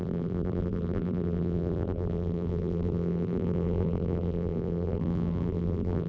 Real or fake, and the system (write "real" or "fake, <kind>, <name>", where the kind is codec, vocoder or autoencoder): fake, vocoder, BigVGAN v2